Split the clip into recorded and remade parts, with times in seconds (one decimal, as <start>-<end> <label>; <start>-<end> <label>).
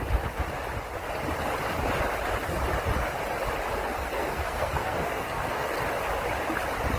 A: 0.0-3.9 recorded; 3.9-5.7 remade; 5.7-7.0 recorded